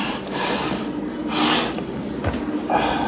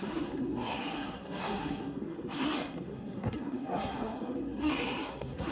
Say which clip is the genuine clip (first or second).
first